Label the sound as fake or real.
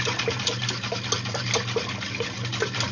real